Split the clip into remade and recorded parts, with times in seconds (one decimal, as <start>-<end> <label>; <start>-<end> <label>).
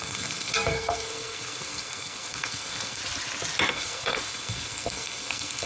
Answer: 0.0-3.0 remade; 3.0-3.7 recorded; 3.7-5.7 remade